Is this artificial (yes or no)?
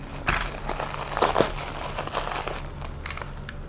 no